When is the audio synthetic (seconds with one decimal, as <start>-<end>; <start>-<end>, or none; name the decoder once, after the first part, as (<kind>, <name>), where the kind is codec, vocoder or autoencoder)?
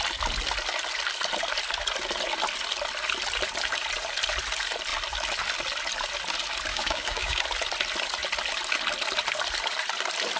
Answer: 6.7-7.4 (codec, DAC)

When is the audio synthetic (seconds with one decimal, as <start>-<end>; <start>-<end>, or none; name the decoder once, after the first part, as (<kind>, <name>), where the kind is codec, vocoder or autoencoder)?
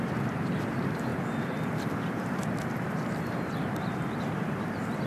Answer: none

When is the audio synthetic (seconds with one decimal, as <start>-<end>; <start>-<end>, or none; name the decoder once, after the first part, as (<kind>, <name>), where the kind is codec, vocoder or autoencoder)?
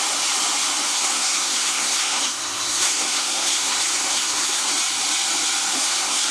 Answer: 0.9-4.7 (codec, SNAC); 5.7-6.3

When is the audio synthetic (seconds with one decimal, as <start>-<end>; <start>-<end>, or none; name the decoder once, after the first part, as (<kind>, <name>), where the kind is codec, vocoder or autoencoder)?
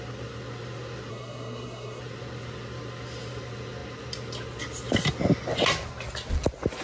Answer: 1.1-2.0 (codec, SNAC)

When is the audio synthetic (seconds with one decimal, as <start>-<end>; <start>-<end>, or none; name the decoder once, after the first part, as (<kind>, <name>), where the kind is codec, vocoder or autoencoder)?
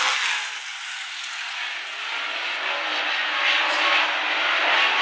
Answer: none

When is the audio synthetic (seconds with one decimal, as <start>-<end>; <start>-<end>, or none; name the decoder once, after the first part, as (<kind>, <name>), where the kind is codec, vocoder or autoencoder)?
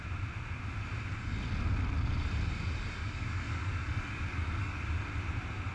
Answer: 3.0-4.8 (codec, DAC)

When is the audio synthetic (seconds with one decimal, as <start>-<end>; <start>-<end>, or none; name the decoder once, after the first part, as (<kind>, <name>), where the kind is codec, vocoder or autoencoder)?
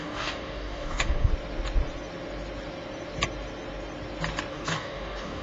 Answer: 0.0-1.3 (codec, DAC); 4.5-5.4